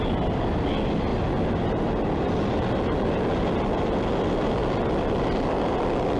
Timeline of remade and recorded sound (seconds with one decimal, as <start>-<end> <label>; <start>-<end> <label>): 0.0-6.2 recorded